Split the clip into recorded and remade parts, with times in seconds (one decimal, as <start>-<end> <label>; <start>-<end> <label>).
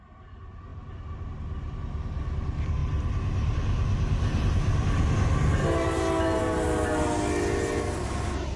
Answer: 0.0-8.6 recorded